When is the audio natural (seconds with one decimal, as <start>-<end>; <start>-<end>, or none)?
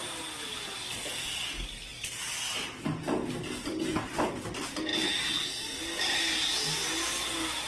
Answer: 0.0-7.7